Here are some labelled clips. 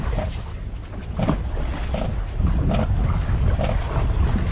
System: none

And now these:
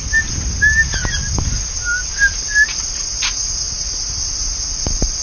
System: none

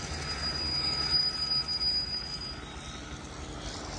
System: none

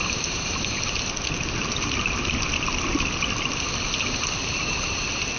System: none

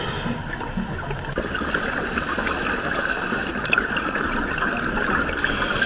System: none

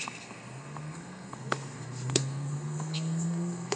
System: codec, SNAC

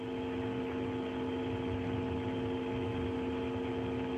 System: none